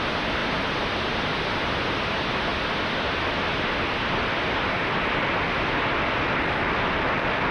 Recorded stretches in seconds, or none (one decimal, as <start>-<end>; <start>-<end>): 0.0-7.5